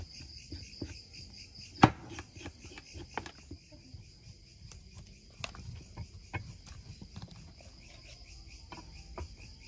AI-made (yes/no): no